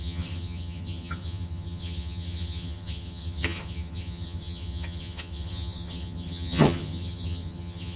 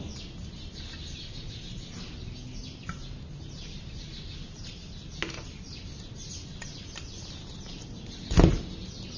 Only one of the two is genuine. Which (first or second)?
second